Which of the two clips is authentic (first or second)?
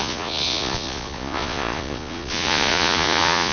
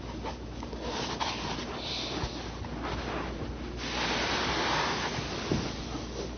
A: second